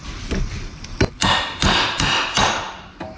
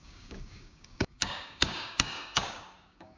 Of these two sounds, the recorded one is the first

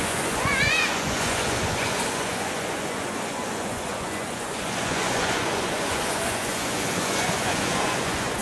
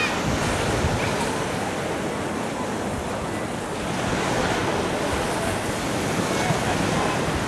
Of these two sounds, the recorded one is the second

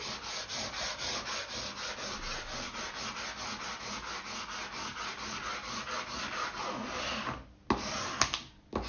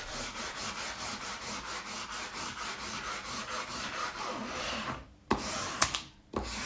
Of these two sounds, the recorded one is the first